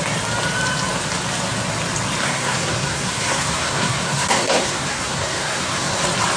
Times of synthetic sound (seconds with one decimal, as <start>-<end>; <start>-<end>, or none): 2.2-6.0